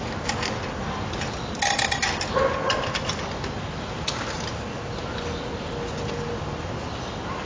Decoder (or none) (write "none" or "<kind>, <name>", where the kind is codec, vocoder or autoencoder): none